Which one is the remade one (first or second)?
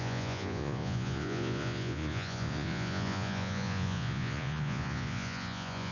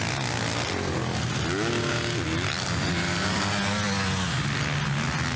first